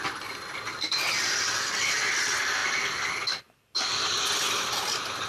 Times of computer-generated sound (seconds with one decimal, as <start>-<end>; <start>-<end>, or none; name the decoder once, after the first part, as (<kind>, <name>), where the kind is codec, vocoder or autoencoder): none